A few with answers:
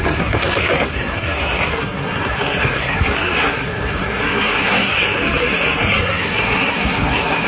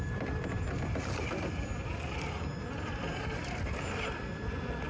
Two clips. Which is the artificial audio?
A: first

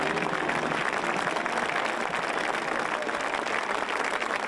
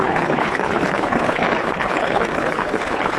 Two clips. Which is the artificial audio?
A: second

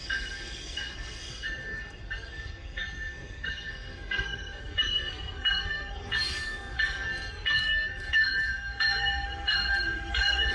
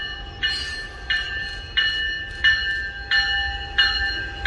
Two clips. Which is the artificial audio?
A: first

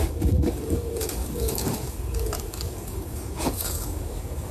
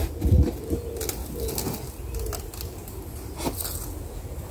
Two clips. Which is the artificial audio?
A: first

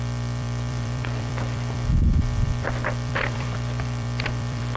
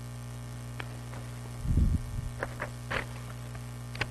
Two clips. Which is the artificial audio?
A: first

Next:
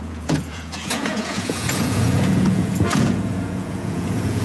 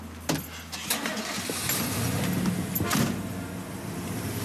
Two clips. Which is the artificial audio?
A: first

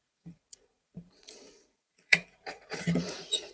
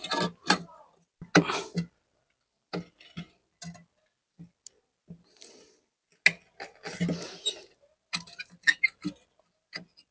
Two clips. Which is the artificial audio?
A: first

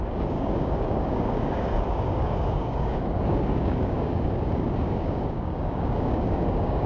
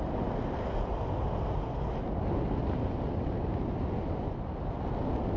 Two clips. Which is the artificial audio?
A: first